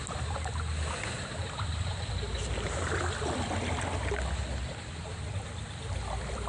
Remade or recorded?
remade